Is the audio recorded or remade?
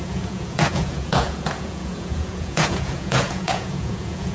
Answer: remade